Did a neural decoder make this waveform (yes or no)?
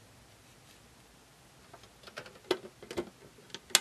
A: no